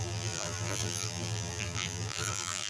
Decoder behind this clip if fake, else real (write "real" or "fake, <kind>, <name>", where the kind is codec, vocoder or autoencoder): fake, vocoder, BigVGAN v2